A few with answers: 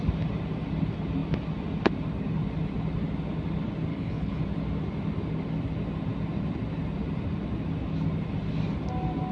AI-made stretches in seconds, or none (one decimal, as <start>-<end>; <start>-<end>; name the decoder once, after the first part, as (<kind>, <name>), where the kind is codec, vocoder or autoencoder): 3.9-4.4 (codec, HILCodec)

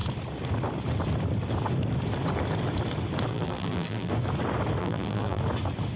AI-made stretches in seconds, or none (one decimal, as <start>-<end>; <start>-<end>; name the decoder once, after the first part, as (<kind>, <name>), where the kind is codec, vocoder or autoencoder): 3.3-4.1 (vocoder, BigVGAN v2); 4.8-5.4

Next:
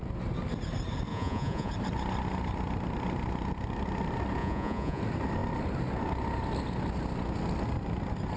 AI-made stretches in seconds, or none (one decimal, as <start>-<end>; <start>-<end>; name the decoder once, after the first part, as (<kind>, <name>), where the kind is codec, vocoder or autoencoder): 1.1-1.7 (vocoder, Vocos); 4.4-5.0

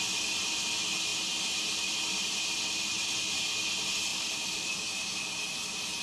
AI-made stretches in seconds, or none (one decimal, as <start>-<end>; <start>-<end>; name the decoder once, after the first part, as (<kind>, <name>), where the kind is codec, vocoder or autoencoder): 4.1-4.7 (vocoder, BigVGAN v2)